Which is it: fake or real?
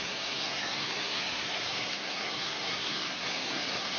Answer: fake